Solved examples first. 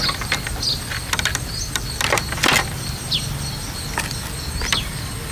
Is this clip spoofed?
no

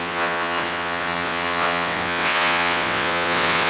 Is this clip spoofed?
yes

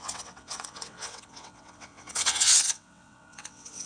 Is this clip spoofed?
yes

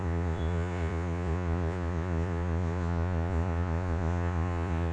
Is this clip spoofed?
yes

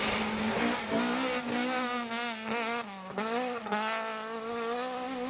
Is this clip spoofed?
no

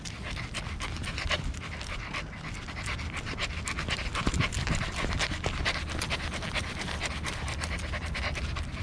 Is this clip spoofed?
no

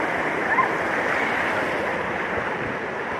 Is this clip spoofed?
yes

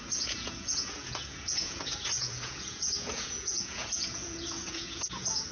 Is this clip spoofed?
yes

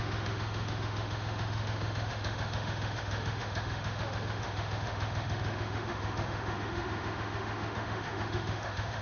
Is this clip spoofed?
yes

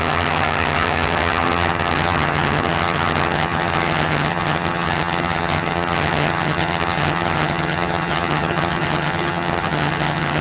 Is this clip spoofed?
yes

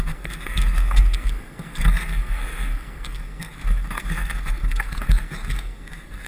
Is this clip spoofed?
yes